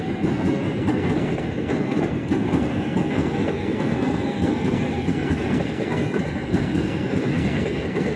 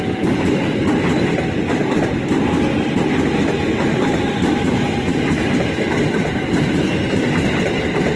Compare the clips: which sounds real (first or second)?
second